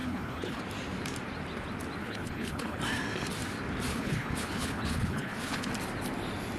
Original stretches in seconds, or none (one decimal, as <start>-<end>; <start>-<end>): 0.6-2.0; 2.8-3.9; 5.7-6.6